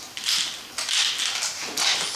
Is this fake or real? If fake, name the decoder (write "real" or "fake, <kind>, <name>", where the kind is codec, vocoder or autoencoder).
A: real